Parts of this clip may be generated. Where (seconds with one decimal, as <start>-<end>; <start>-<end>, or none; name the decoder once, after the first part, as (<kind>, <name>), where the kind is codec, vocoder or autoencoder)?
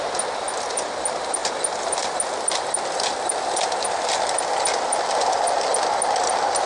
none